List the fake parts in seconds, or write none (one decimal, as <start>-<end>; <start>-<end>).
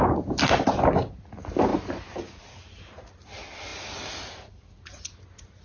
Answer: none